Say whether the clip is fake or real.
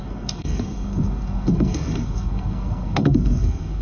fake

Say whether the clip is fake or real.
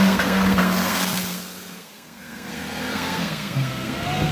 fake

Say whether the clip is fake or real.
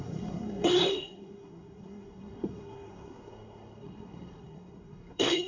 fake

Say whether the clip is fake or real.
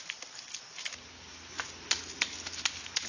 real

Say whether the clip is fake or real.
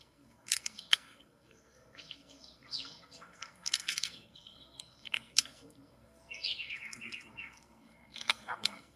fake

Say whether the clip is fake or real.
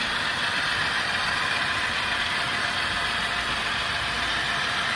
real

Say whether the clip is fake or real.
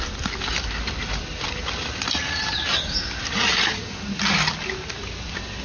real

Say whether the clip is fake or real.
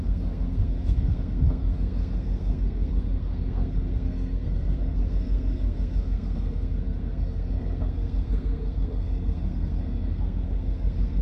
fake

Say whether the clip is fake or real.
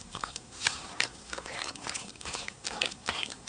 fake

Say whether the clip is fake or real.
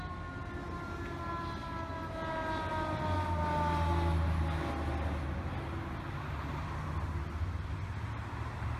real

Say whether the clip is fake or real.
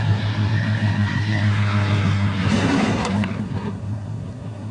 fake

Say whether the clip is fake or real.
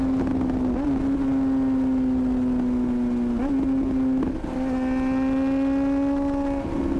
real